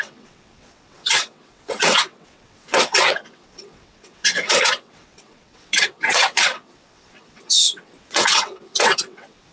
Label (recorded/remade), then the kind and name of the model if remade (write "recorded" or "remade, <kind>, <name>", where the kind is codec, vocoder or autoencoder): remade, vocoder, WaveNeXt